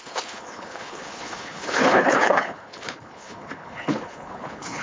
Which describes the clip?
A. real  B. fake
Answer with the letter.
B